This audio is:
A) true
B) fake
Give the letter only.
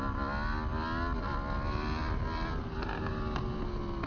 A